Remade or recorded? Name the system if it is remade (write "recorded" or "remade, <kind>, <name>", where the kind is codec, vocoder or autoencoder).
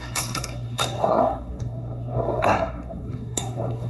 remade, codec, SNAC